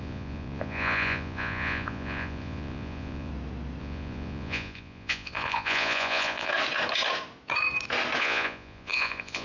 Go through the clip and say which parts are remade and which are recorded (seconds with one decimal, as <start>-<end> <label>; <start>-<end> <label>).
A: 0.0-3.3 remade; 3.3-3.8 recorded; 3.8-6.5 remade; 6.5-8.2 recorded; 8.2-9.4 remade